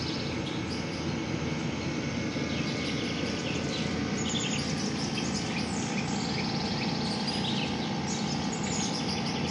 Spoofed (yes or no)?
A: no